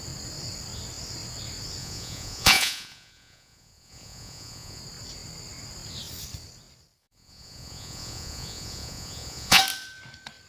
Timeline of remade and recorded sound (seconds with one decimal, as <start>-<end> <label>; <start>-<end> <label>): 0.0-1.8 recorded; 1.8-4.8 remade; 4.8-7.0 recorded; 7.0-9.6 remade; 9.6-10.5 recorded